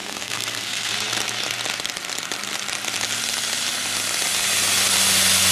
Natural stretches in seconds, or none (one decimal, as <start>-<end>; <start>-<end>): 0.9-5.5